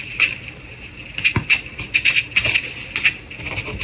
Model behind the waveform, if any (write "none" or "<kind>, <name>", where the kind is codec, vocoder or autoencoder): none